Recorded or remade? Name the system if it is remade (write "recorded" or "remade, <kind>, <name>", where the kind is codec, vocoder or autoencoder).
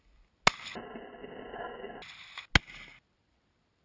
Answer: recorded